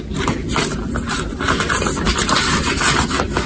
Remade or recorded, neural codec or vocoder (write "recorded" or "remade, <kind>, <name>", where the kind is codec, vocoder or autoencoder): recorded